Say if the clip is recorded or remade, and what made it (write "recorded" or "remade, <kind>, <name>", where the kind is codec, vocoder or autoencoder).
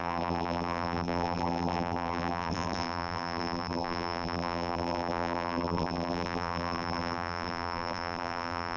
remade, vocoder, BigVGAN v2